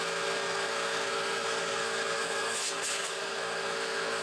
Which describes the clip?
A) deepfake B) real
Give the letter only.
A